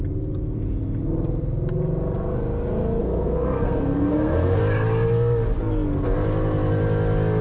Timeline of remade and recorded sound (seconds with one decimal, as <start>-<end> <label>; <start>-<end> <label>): 0.0-3.0 recorded; 3.0-4.6 remade; 4.6-7.4 recorded